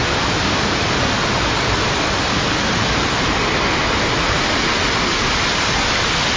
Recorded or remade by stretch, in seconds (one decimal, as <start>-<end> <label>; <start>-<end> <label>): 0.0-0.8 remade; 0.8-6.4 recorded